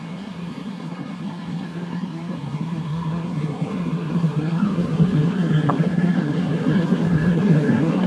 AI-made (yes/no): yes